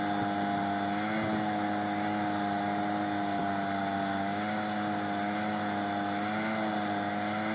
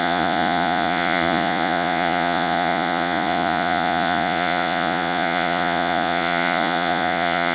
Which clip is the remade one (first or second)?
second